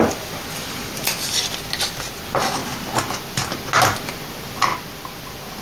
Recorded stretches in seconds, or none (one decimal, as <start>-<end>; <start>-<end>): 0.0-5.6